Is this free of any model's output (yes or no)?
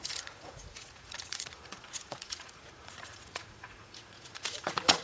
no